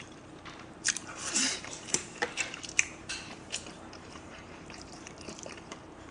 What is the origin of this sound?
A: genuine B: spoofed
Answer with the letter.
B